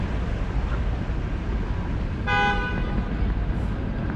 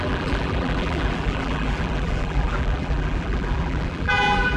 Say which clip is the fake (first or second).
second